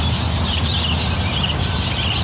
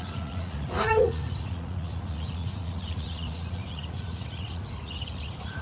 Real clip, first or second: first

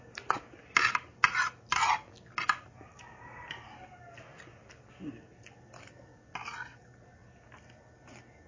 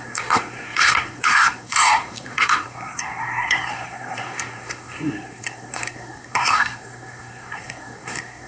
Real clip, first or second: first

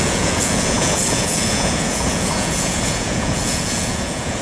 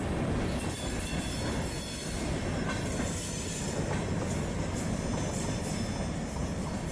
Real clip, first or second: second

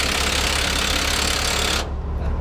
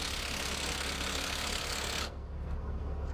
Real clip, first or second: first